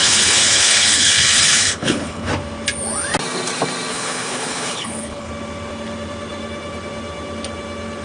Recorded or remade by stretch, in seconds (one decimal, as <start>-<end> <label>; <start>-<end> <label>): 0.0-2.3 remade; 2.3-3.9 recorded; 3.9-5.3 remade; 5.3-8.0 recorded